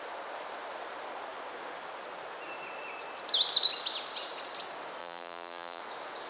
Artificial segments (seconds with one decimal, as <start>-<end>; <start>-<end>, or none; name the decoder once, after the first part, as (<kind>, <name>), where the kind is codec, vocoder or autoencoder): 5.0-5.8 (vocoder, BigVGAN v2)